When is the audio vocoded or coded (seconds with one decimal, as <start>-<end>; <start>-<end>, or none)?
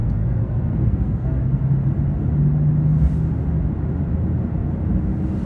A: 0.0-1.6